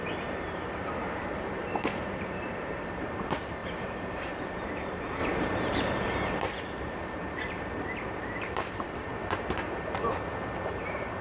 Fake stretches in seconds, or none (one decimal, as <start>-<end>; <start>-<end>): 0.0-9.1; 10.7-11.2